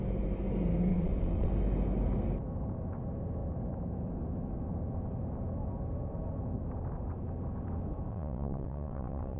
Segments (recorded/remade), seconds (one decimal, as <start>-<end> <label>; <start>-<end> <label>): 0.0-0.9 recorded; 0.9-1.5 remade; 1.5-8.1 recorded; 8.1-9.4 remade